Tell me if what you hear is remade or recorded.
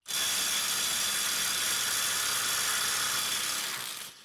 recorded